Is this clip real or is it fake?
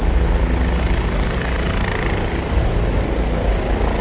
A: real